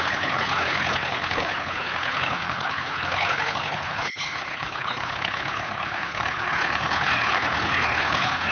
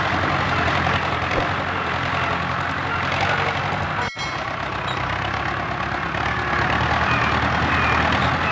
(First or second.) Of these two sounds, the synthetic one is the first